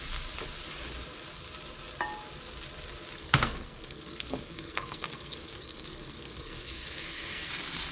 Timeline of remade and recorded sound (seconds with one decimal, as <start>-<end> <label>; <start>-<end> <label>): 0.0-3.2 recorded; 3.2-7.5 remade; 7.5-7.9 recorded